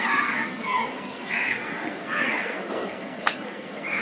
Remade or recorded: remade